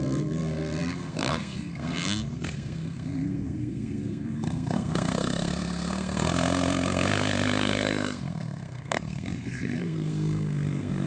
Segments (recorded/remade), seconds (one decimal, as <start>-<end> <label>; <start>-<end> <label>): 0.0-11.1 remade